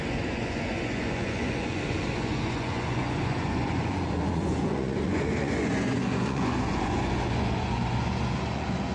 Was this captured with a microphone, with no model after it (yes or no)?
no